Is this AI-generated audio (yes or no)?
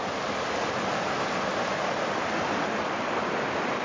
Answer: no